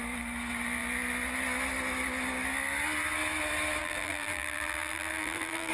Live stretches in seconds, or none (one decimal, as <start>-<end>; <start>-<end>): 0.0-3.8

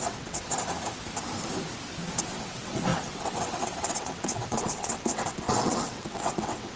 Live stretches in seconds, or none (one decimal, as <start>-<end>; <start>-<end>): 0.6-2.3

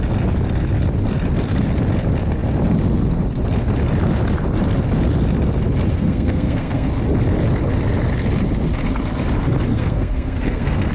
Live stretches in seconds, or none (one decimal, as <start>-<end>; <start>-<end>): 0.0-5.9; 6.9-9.7

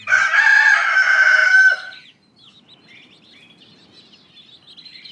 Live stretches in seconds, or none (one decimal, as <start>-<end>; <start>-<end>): 0.0-5.1